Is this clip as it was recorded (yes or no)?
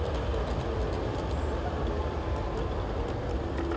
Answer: yes